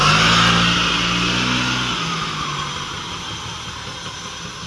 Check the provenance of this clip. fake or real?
real